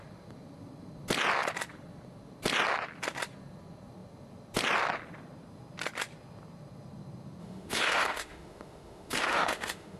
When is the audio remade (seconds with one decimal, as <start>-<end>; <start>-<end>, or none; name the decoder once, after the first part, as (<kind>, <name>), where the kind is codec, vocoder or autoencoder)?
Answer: 7.4-10.0 (autoencoder, DAC-VAE)